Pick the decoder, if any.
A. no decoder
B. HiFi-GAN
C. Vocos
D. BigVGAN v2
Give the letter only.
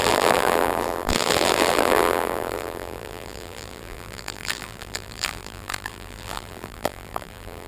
D